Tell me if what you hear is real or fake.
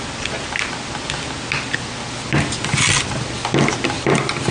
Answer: real